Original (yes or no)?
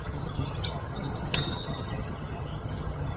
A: no